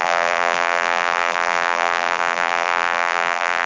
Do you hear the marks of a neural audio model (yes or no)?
yes